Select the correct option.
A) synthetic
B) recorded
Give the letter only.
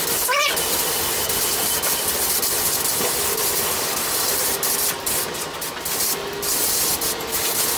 B